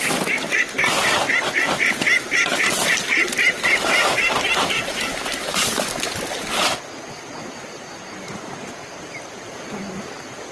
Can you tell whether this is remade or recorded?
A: recorded